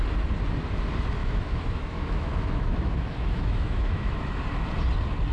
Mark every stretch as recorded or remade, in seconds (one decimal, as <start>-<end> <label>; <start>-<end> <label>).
0.0-1.2 recorded; 1.2-4.4 remade; 4.4-5.3 recorded